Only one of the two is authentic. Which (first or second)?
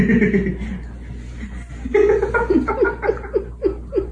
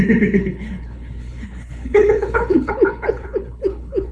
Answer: first